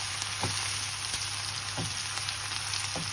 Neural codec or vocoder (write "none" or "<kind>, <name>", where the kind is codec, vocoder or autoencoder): none